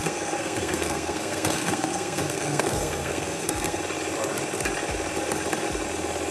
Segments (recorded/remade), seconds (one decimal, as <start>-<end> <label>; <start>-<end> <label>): 0.0-3.8 remade; 3.8-6.3 recorded